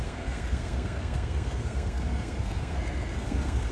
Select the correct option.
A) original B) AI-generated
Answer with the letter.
B